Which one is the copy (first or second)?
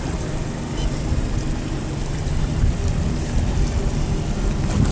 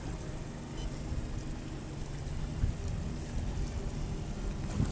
first